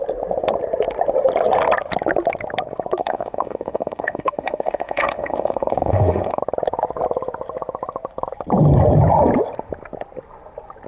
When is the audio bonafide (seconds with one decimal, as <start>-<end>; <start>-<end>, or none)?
0.0-3.0; 6.4-10.9